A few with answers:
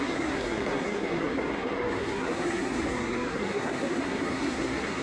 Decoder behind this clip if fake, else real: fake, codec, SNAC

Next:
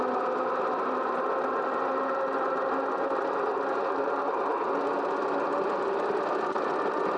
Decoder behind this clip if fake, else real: real